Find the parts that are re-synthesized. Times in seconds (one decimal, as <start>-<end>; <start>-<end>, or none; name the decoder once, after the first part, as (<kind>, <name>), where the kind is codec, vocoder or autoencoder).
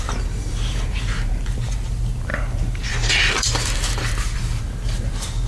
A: 0.0-5.5 (vocoder, BigVGAN v2)